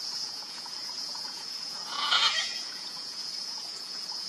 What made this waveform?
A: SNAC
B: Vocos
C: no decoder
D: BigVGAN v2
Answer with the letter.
B